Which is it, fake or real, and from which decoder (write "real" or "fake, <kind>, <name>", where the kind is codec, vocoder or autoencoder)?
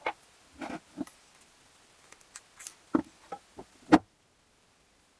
real